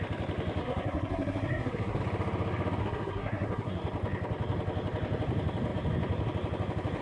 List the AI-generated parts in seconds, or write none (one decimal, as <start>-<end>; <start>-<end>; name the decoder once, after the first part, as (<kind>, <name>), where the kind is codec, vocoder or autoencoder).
0.6-2.0 (codec, SNAC); 2.8-3.8